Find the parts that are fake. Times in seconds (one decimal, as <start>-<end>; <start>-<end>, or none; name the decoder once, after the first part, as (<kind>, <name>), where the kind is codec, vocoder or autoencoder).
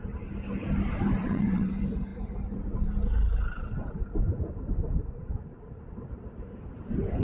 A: 1.2-1.7 (vocoder, WaveNeXt)